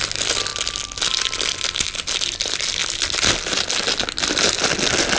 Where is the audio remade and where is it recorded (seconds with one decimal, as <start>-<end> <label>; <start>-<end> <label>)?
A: 0.0-5.2 recorded